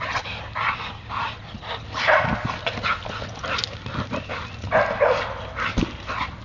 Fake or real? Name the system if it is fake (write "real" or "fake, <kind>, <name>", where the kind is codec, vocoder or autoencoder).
real